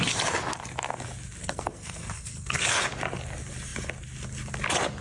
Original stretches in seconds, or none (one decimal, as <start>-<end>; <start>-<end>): 0.0-1.4; 2.8-5.0